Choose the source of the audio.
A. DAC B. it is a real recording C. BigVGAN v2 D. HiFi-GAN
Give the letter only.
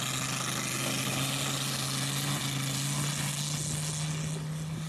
B